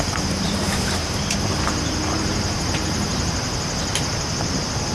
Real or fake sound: fake